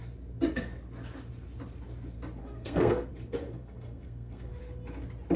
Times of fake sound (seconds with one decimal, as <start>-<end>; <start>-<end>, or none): 2.4-3.1; 3.6-4.5